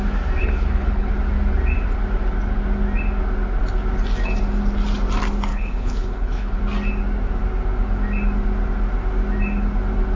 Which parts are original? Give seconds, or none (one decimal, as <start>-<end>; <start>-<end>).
0.0-0.4; 1.1-5.5; 6.6-10.2